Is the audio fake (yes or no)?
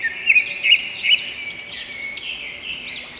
no